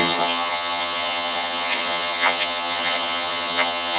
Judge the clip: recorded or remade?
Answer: remade